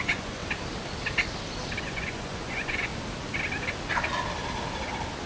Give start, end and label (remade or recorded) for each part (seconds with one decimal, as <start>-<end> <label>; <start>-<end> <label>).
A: 0.0-0.4 remade; 0.4-1.8 recorded; 1.8-2.9 remade; 2.9-5.3 recorded